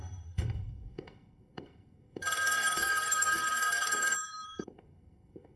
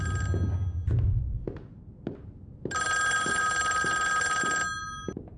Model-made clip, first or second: first